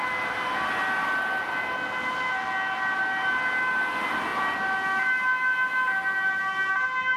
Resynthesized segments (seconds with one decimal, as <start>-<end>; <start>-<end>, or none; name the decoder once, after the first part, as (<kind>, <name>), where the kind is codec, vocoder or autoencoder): none